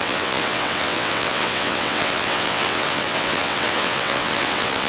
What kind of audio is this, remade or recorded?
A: remade